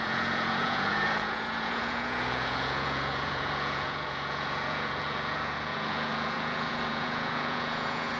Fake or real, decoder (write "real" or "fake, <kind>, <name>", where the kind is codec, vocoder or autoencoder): fake, vocoder, Vocos